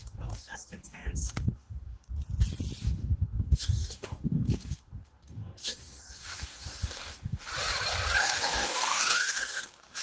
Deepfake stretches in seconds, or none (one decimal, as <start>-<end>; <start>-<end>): 0.0-2.1; 2.8-7.5; 8.2-10.0